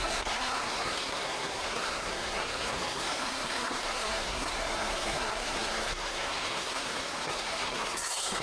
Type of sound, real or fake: fake